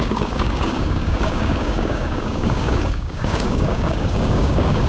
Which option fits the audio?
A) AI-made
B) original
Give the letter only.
A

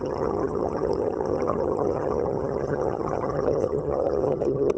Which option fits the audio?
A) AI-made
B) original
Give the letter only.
A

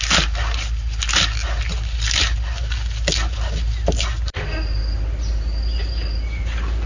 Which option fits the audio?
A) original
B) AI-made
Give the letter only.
A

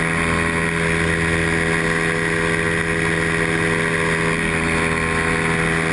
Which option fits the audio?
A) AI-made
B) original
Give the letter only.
B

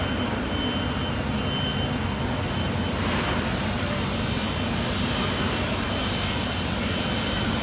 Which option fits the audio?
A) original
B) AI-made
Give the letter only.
A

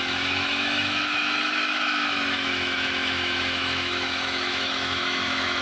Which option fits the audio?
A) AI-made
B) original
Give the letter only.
A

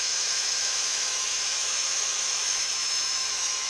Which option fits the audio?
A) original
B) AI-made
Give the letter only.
B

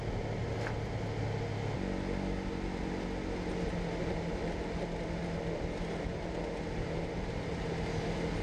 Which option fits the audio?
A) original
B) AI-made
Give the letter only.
A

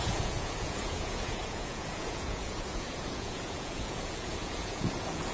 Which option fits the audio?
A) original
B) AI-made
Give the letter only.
B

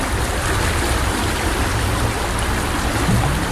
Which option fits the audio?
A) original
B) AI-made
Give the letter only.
A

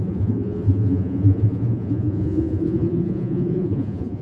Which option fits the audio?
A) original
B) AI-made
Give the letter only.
B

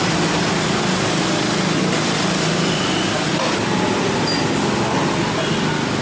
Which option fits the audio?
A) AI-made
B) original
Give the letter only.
B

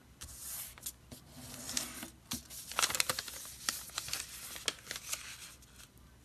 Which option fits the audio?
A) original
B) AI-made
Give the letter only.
A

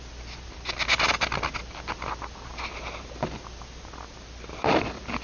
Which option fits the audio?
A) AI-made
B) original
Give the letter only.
B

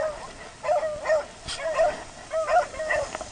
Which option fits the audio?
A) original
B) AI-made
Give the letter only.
A